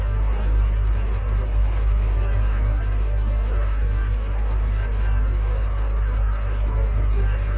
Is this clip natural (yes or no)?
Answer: no